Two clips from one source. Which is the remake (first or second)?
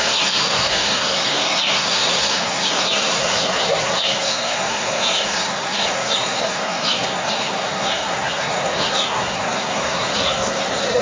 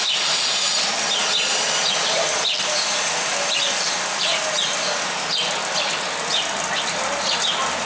first